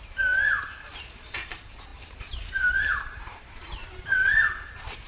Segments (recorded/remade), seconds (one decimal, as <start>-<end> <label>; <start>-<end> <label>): 0.0-5.1 remade